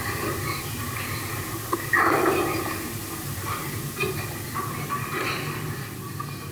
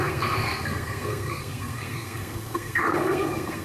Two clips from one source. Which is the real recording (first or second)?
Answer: first